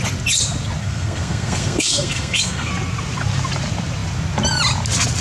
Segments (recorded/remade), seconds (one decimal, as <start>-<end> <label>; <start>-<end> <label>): 0.0-0.8 recorded; 0.8-2.7 remade; 2.7-5.2 recorded